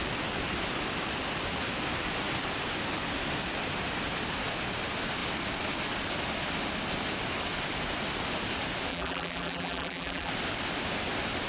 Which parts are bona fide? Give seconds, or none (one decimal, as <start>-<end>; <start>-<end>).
0.0-8.9; 10.3-11.5

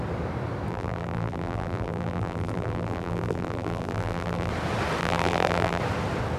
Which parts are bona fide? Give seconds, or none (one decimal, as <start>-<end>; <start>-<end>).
0.0-0.7; 4.5-5.0; 5.8-6.4